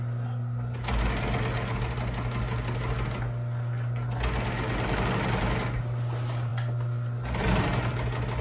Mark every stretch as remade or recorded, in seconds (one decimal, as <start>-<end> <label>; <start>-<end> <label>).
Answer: 0.0-8.4 recorded